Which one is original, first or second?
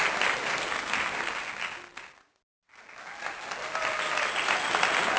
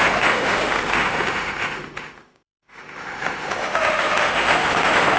first